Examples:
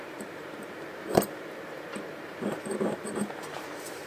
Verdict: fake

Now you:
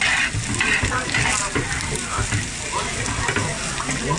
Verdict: real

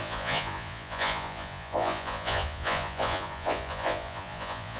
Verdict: fake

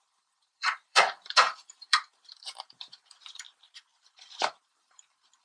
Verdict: fake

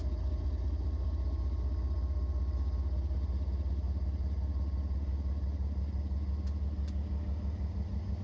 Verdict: real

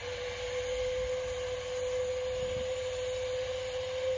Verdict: real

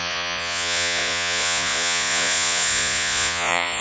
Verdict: fake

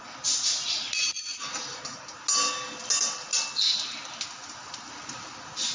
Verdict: real